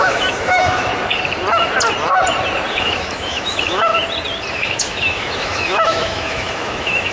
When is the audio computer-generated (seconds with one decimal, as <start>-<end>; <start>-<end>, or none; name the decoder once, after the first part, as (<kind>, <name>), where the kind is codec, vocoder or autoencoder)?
0.0-0.9 (autoencoder, DAC-VAE); 2.7-3.9; 4.5-7.1